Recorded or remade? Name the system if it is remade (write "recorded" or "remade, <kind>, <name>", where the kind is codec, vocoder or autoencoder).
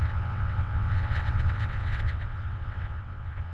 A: remade, vocoder, WaveNeXt